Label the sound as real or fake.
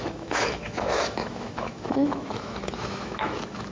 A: fake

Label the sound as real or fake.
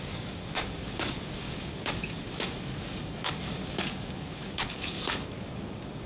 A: fake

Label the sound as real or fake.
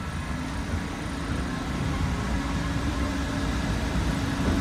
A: real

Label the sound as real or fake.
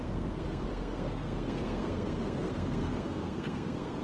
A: fake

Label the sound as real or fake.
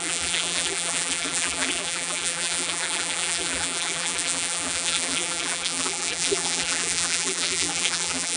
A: fake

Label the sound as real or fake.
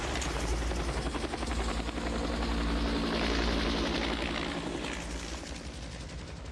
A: real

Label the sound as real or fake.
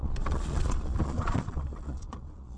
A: fake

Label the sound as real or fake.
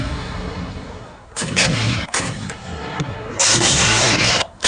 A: fake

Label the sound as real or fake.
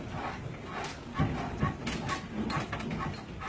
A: real